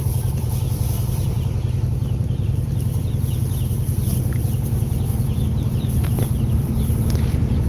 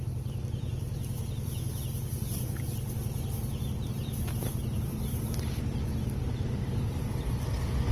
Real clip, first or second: second